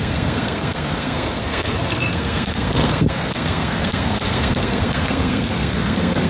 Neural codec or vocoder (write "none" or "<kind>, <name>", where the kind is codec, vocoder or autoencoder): codec, SNAC